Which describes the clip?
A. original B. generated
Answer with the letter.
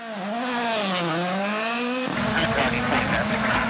A